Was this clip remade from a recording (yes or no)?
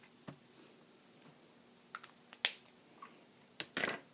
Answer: no